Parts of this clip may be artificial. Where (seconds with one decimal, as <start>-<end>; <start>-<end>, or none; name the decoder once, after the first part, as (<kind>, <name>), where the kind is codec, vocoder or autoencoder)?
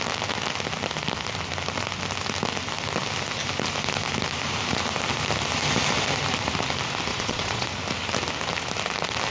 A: 7.1-7.7 (vocoder, Vocos)